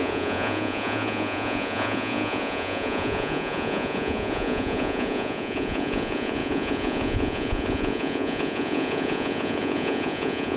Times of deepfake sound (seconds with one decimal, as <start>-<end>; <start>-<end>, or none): 0.0-10.6

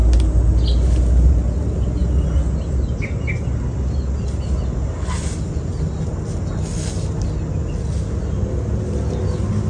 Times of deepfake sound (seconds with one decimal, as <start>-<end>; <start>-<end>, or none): none

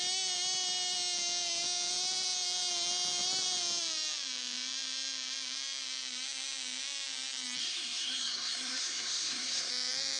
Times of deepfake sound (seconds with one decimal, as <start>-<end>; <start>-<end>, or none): 7.6-9.7

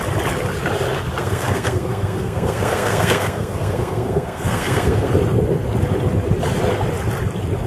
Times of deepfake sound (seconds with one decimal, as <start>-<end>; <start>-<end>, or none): 1.2-5.1

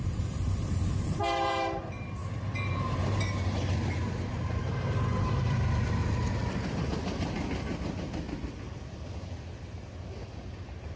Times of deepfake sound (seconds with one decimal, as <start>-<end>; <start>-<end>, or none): 0.0-6.0; 10.5-11.0

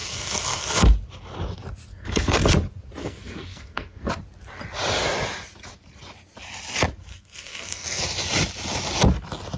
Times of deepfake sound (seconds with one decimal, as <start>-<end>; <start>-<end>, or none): 0.0-0.8; 1.9-2.5; 3.0-4.1; 7.1-8.0